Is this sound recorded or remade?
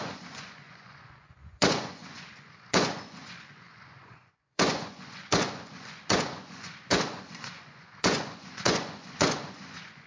remade